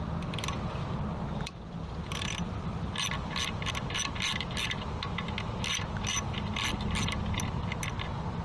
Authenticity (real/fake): real